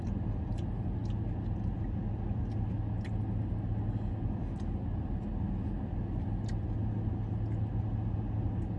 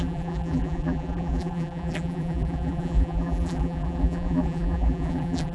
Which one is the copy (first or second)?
second